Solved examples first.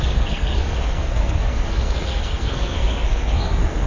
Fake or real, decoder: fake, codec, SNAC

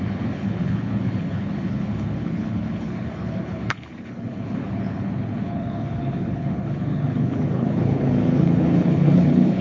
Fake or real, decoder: fake, codec, HILCodec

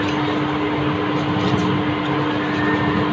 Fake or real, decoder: real